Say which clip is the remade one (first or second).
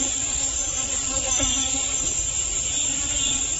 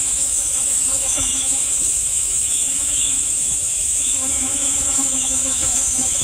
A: second